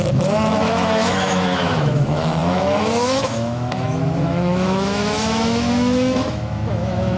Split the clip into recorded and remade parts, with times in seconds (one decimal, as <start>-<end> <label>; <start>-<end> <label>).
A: 0.0-7.2 remade